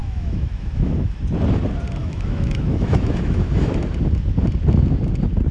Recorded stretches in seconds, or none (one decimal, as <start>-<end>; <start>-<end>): 1.2-2.0; 3.7-5.5